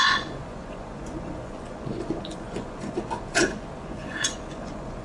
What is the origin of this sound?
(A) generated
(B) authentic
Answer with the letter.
A